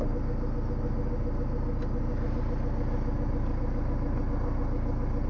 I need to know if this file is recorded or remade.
recorded